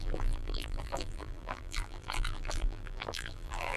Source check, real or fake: fake